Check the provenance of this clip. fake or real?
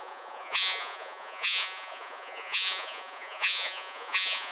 fake